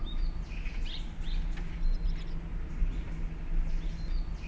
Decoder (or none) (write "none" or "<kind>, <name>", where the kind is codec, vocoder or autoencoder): none